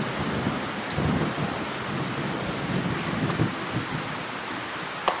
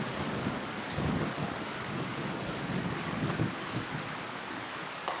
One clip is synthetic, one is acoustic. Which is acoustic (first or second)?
first